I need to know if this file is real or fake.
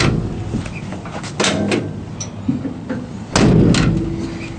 real